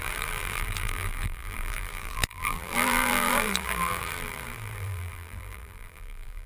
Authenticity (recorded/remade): remade